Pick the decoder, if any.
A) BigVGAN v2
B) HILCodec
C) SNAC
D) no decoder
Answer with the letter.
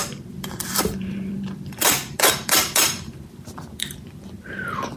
A